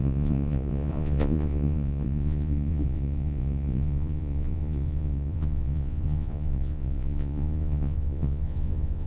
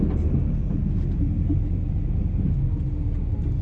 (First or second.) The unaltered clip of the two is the second